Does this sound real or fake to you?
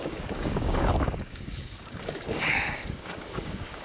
fake